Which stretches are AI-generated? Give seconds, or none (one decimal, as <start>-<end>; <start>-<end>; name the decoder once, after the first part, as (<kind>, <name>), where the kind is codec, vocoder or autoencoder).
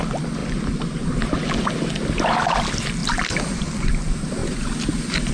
0.0-0.4 (vocoder, BigVGAN v2); 2.6-4.4